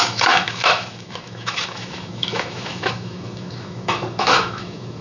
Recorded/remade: remade